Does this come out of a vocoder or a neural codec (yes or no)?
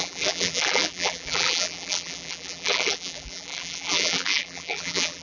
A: yes